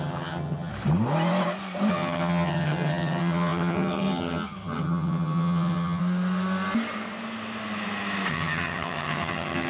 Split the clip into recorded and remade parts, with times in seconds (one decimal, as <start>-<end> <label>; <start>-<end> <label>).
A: 0.0-0.7 remade; 0.7-1.9 recorded; 1.9-6.0 remade; 6.0-8.3 recorded; 8.3-9.7 remade